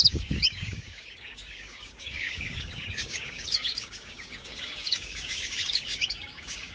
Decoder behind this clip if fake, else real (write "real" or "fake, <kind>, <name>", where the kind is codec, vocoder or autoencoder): fake, codec, DAC